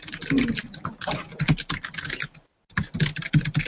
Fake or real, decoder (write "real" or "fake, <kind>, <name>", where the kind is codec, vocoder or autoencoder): real